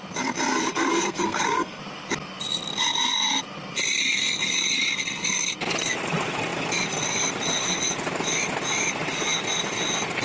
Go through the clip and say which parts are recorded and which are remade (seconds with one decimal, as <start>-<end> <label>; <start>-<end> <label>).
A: 0.0-0.6 recorded; 0.6-1.8 remade; 1.8-10.2 recorded